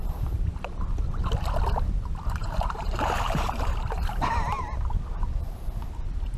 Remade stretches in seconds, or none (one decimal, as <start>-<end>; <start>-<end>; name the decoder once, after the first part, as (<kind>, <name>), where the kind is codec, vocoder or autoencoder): 0.0-1.2 (vocoder, BigVGAN v2); 2.4-4.6